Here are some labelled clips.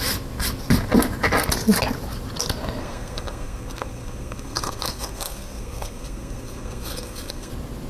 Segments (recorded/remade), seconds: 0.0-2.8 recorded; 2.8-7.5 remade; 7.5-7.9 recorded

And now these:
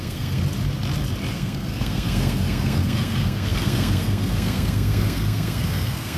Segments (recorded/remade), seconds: 0.0-0.4 remade; 0.4-1.3 recorded; 1.3-6.2 remade